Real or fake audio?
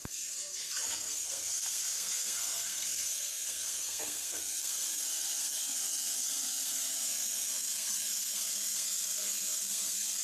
fake